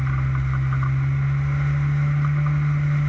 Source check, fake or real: real